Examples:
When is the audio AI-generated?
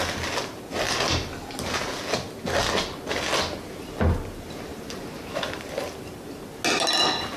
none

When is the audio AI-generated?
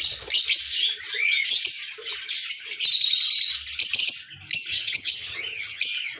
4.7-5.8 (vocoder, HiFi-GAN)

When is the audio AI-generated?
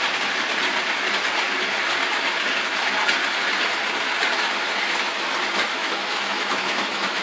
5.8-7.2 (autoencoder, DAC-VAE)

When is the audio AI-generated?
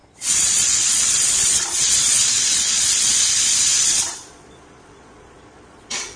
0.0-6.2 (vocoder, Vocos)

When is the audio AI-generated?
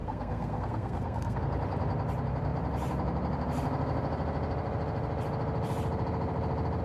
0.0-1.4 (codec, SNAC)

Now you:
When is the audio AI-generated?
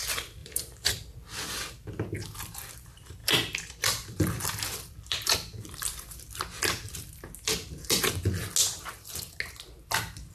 0.4-0.9 (vocoder, BigVGAN v2); 3.2-6.4